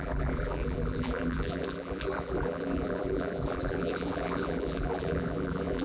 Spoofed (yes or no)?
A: yes